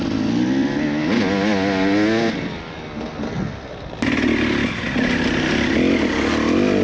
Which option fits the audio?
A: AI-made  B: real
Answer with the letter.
B